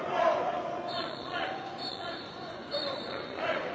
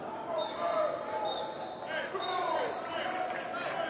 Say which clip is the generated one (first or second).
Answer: first